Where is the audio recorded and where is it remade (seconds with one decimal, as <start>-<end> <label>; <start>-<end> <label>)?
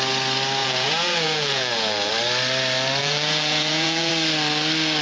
0.0-0.6 recorded; 0.6-2.1 remade; 2.1-3.0 recorded; 3.0-4.1 remade; 4.1-5.0 recorded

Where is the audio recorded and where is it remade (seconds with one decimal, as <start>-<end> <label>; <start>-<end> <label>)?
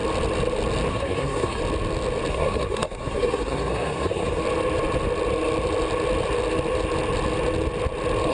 0.0-0.9 recorded; 0.9-1.6 remade; 1.6-2.3 recorded; 2.3-4.4 remade; 4.4-8.3 recorded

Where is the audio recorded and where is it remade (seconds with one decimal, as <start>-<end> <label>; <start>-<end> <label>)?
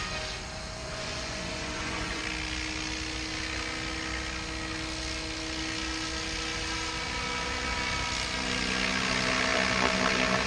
0.0-0.8 recorded; 0.8-2.2 remade; 2.2-10.5 recorded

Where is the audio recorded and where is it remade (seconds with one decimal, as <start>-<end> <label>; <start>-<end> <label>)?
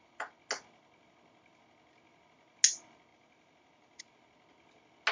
0.0-3.1 recorded; 3.1-4.0 remade; 4.0-5.1 recorded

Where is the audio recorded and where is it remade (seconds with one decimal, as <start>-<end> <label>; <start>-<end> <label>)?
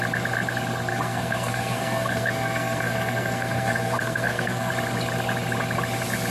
0.0-0.9 recorded; 0.9-4.7 remade; 4.7-6.3 recorded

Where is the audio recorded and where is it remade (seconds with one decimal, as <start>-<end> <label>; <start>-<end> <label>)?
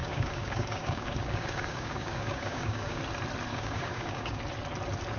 0.0-3.0 remade; 3.0-3.5 recorded; 3.5-4.4 remade; 4.4-5.2 recorded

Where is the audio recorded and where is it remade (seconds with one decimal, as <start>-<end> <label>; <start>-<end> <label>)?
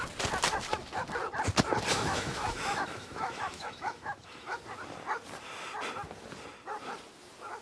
0.0-1.9 recorded; 1.9-4.6 remade; 4.6-7.6 recorded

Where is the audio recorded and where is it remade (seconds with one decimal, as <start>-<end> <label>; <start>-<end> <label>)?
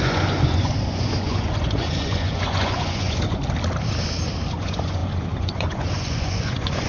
0.0-3.4 remade; 3.4-4.6 recorded; 4.6-6.9 remade